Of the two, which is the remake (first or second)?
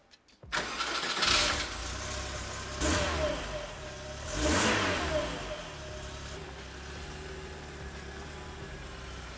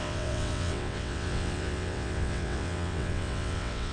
second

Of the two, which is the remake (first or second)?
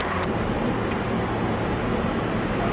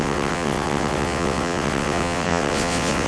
second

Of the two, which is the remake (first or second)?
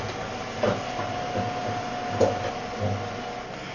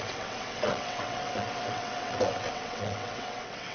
second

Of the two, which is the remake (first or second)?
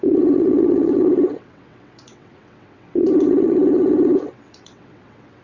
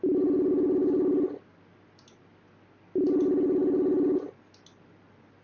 first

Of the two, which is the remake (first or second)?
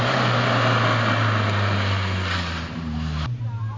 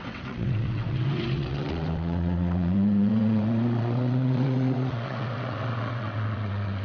second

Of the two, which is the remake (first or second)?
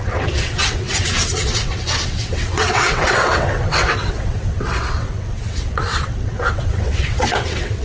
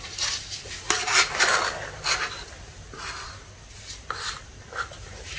first